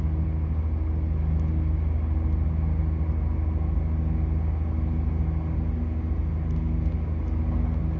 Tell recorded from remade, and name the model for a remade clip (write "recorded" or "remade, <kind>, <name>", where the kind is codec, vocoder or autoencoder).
recorded